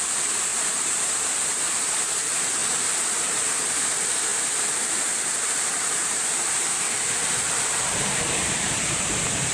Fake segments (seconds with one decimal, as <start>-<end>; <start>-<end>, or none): 0.0-9.5